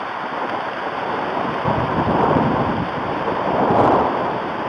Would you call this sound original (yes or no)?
no